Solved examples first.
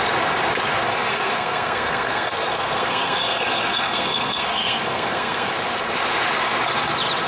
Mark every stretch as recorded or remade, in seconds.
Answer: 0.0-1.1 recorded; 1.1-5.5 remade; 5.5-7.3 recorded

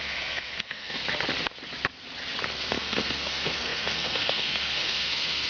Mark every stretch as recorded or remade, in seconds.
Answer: 0.0-1.0 remade; 1.0-2.5 recorded; 2.5-5.5 remade

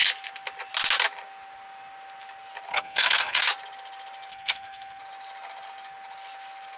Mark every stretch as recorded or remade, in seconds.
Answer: 0.0-2.7 recorded; 2.7-3.4 remade; 3.4-4.3 recorded; 4.3-5.0 remade; 5.0-6.8 recorded

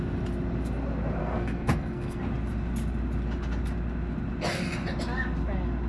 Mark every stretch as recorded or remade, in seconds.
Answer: 0.0-1.2 recorded; 1.2-2.2 remade; 2.2-5.9 recorded

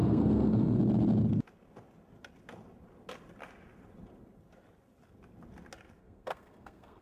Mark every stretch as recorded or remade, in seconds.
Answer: 0.0-0.8 remade; 0.8-6.0 recorded; 6.0-7.0 remade

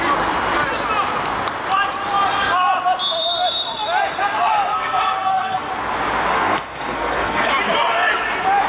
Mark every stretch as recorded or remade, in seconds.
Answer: 0.0-4.5 recorded; 4.5-5.7 remade; 5.7-6.3 recorded; 6.3-7.5 remade; 7.5-8.7 recorded